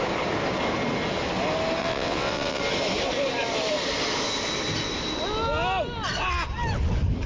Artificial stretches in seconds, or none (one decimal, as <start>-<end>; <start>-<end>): 1.8-2.6